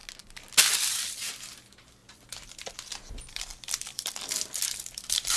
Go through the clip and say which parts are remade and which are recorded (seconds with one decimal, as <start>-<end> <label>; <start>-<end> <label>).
0.0-2.0 recorded; 2.0-5.4 remade